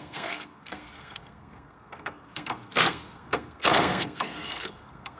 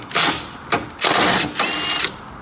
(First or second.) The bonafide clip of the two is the second